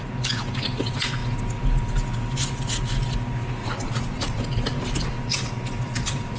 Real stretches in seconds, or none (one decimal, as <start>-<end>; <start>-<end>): 0.0-3.6; 4.4-6.4